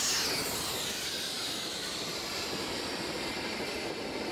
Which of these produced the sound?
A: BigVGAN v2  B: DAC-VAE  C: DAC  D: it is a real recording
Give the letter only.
D